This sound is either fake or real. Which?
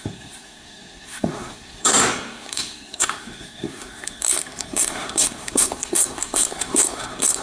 fake